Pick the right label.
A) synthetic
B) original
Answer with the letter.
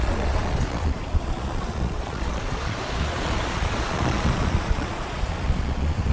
A